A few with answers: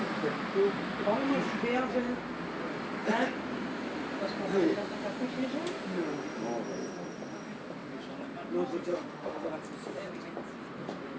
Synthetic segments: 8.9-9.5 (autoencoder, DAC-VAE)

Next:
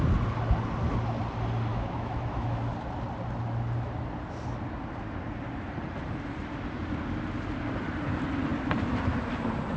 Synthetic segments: 1.7-2.7 (autoencoder, DAC-VAE)

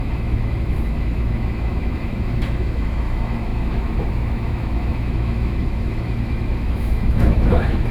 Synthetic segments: 0.0-7.9 (autoencoder, DAC-VAE)

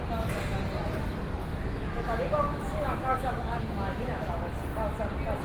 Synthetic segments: 1.4-4.4 (autoencoder, DAC-VAE)